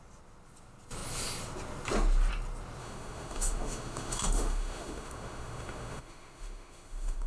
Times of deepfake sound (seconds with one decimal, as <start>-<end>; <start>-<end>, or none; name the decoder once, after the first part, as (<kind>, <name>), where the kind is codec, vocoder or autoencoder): 2.8-7.3 (autoencoder, DAC-VAE)